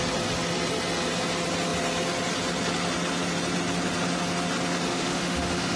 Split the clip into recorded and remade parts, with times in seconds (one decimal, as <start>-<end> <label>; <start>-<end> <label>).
0.0-4.9 recorded; 4.9-5.8 remade